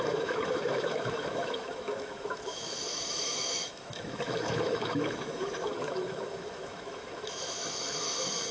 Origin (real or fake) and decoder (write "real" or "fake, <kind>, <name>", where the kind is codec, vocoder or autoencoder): fake, autoencoder, DAC-VAE